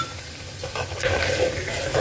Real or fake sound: real